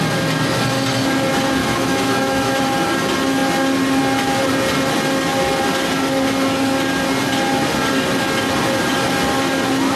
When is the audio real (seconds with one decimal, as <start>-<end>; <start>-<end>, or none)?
0.0-1.6; 2.6-10.0